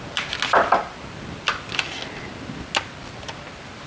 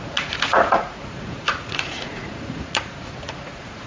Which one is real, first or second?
first